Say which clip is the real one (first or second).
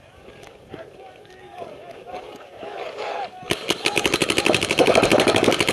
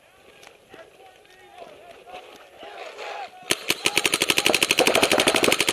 second